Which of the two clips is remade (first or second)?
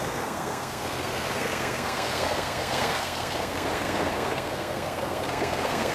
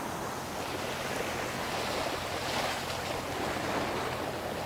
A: first